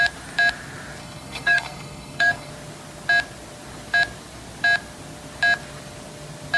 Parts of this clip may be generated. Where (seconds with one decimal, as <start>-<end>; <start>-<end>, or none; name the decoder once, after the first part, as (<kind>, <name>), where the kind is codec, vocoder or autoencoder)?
1.0-2.5 (codec, SNAC)